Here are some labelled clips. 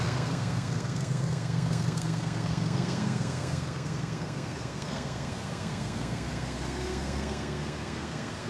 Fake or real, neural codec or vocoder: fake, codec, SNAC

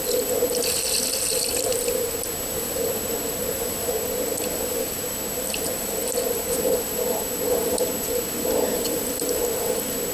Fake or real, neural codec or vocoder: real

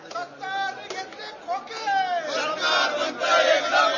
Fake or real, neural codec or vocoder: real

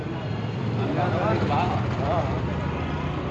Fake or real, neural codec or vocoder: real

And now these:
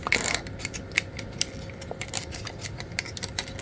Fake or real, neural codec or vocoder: real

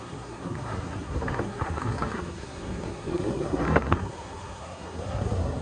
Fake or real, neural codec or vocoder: fake, codec, SNAC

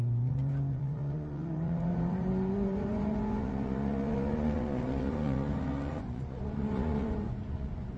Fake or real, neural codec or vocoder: fake, vocoder, Vocos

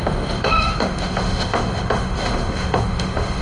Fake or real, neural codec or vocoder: fake, autoencoder, DAC-VAE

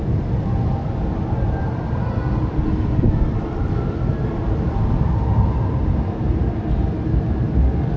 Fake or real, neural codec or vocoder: real